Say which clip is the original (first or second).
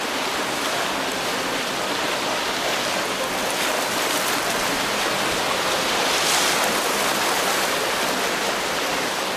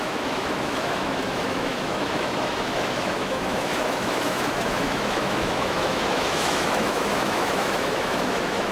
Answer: first